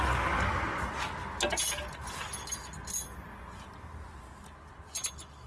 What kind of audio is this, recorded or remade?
recorded